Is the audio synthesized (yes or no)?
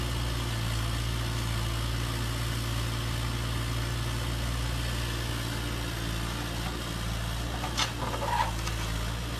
no